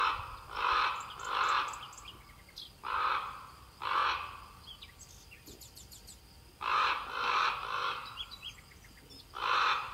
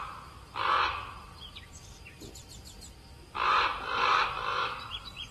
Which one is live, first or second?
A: first